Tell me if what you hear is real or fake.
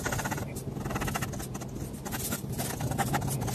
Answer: real